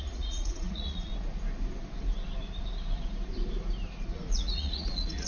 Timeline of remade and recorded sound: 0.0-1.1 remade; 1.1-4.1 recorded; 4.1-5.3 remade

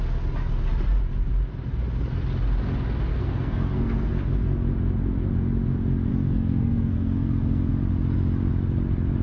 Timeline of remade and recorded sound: 0.0-3.1 recorded; 3.1-4.2 remade; 4.2-6.1 recorded; 6.1-7.7 remade; 7.7-9.2 recorded

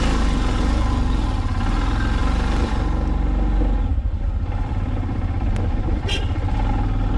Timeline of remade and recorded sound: 0.0-3.9 recorded; 3.9-6.7 remade; 6.7-7.2 recorded